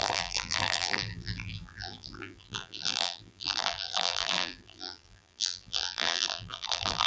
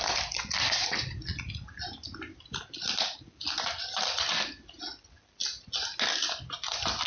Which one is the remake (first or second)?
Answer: first